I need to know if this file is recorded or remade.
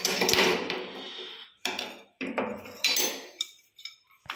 remade